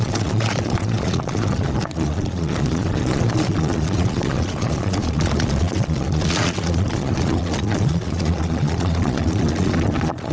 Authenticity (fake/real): fake